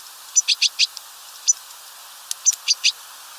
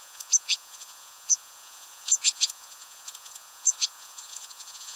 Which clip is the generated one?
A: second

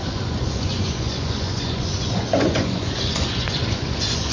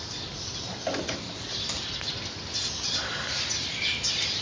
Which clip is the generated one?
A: first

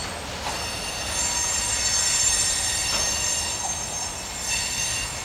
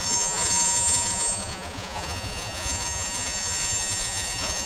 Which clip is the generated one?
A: second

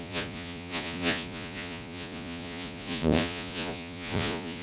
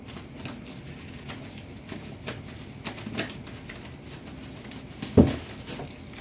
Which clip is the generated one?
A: first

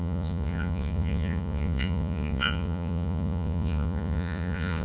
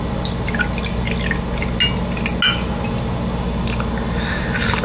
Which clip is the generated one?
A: first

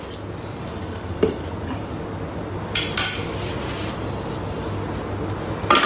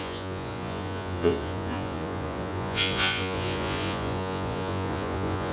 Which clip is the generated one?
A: second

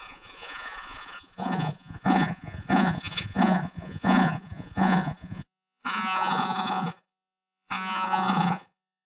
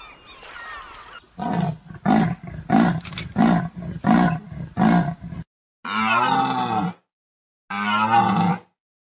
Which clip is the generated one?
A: first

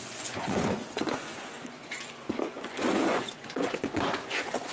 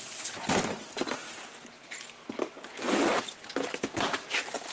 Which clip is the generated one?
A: first